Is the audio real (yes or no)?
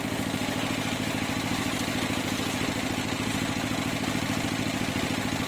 yes